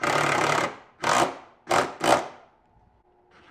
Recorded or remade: recorded